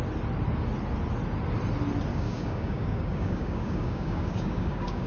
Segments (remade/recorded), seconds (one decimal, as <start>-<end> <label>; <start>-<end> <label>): 0.0-2.1 recorded; 2.1-5.1 remade